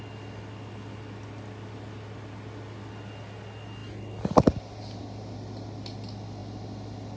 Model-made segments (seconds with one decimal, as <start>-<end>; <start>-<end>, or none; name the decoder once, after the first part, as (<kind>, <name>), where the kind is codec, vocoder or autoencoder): none